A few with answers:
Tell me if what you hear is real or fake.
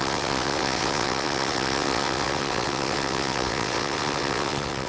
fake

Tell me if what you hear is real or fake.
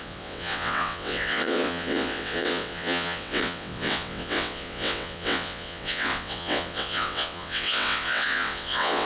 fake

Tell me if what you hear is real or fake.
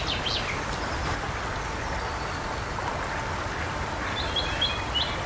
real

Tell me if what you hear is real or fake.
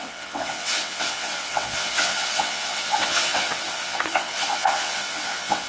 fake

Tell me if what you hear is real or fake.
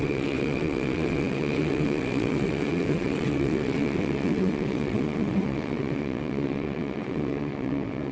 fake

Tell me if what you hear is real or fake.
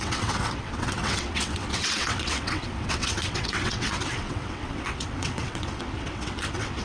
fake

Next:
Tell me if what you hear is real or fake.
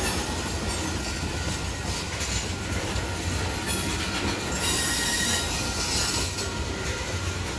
real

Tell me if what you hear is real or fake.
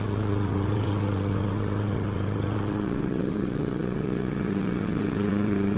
fake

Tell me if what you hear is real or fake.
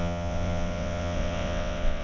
fake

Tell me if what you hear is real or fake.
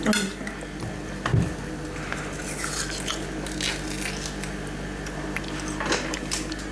real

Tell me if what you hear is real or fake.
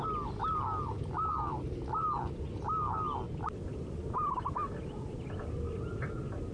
real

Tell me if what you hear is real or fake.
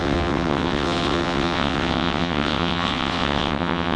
fake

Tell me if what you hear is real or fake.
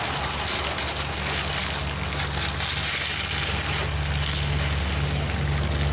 real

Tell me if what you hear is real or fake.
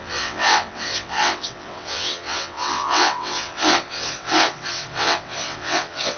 fake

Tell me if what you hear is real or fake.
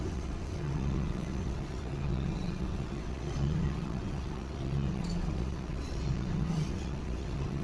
fake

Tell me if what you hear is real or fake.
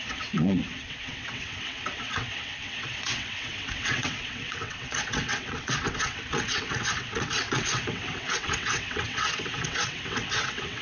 fake